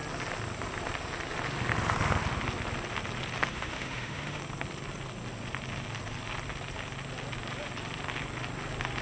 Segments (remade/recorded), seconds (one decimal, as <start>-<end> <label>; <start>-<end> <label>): 0.0-3.5 recorded; 3.5-4.4 remade; 4.4-9.0 recorded